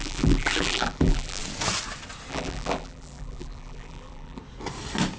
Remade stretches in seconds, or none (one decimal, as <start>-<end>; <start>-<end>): 0.0-1.4; 2.3-4.4